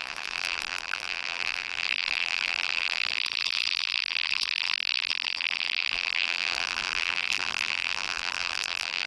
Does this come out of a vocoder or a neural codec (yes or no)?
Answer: yes